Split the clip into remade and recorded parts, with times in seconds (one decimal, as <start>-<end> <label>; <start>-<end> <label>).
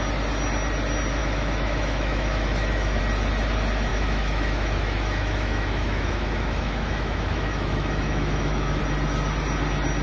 0.0-1.2 recorded; 1.2-3.0 remade; 3.0-3.9 recorded; 3.9-8.8 remade; 8.8-10.0 recorded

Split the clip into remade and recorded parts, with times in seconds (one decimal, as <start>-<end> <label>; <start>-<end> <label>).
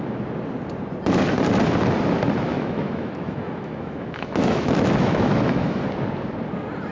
0.0-2.5 recorded; 2.5-5.8 remade; 5.8-6.9 recorded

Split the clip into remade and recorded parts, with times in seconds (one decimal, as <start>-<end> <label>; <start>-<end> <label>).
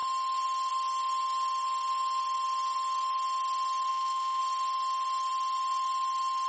0.0-3.9 recorded; 3.9-4.4 remade; 4.4-6.5 recorded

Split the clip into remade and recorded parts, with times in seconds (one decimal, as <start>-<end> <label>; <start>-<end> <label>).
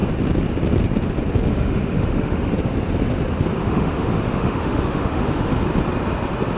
0.0-1.5 recorded; 1.5-2.5 remade; 2.5-3.6 recorded; 3.6-5.5 remade; 5.5-6.6 recorded